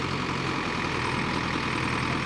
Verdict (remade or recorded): recorded